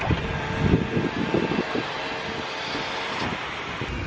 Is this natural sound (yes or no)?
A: yes